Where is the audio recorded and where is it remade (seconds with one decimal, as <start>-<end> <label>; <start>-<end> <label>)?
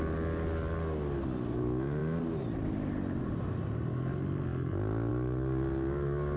0.0-6.4 recorded